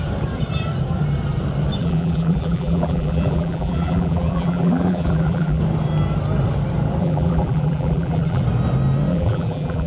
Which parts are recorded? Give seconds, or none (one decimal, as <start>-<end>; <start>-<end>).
0.0-1.8; 5.6-7.0; 8.4-9.1